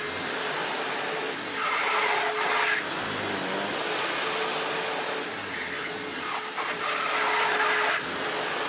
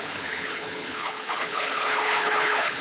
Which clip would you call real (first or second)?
first